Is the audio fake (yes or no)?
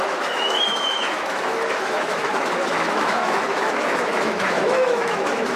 yes